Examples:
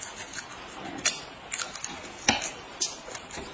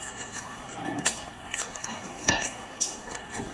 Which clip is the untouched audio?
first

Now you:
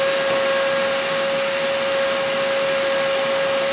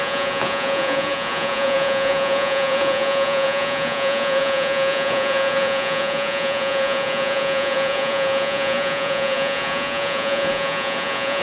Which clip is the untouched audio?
first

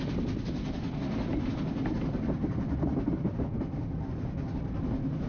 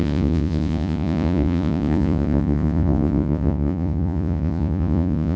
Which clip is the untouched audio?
first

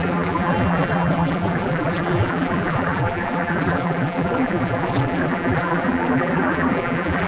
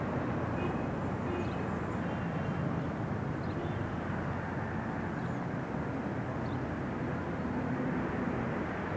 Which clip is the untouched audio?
second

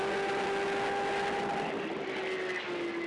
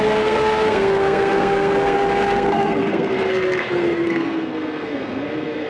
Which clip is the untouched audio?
first